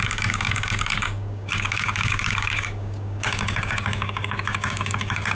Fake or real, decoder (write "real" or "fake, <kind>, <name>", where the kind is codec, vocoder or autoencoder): fake, codec, DAC